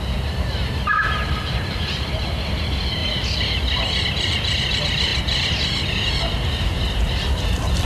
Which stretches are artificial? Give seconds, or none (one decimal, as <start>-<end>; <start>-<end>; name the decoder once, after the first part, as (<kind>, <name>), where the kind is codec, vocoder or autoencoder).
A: 0.0-3.0 (vocoder, BigVGAN v2); 3.8-5.1; 6.1-7.9